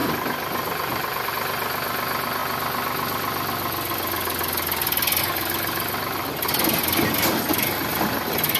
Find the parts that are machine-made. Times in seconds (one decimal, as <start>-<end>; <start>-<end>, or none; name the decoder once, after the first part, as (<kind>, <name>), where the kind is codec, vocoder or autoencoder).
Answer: none